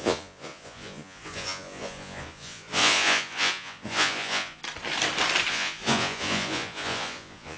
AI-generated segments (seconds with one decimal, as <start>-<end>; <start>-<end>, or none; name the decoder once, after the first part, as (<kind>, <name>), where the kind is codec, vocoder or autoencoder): 0.0-4.6 (vocoder, Vocos); 5.5-7.6